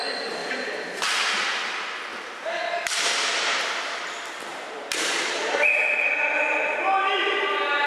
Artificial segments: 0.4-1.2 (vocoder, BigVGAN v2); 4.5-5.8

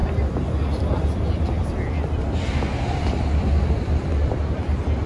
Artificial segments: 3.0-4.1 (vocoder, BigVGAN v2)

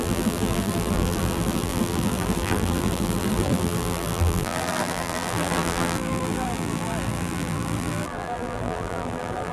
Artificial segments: 0.0-9.5 (vocoder, BigVGAN v2)

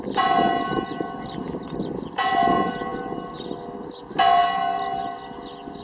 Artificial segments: none

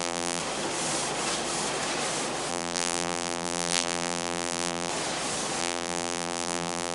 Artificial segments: 0.0-0.4 (vocoder, BigVGAN v2); 2.5-4.9; 5.6-6.9

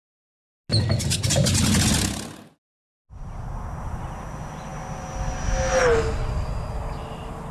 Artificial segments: none